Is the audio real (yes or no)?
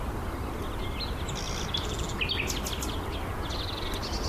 yes